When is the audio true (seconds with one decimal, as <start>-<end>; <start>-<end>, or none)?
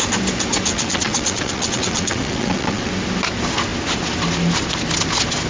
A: 0.0-0.7; 2.9-5.5